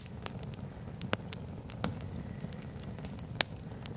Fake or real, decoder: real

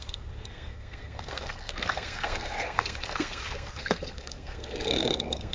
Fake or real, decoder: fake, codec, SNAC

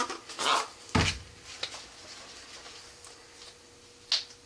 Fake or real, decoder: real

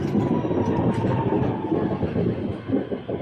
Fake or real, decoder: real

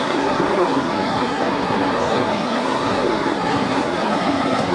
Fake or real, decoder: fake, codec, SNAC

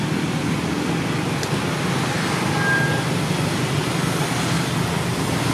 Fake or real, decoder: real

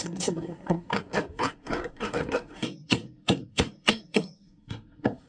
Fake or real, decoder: fake, codec, SNAC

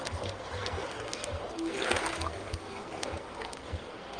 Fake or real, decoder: fake, codec, SNAC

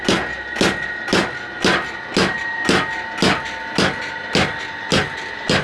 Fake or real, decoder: real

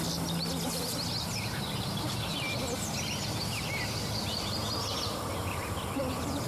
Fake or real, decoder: real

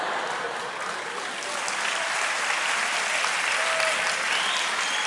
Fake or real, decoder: real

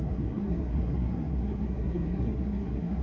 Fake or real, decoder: fake, codec, SNAC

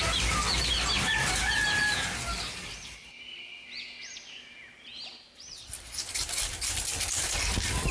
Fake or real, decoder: real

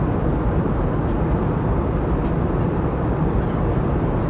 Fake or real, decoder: real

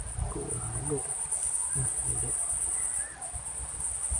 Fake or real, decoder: real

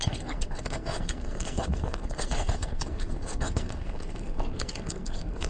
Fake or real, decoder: fake, codec, SNAC